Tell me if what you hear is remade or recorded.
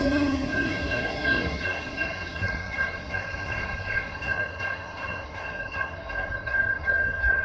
remade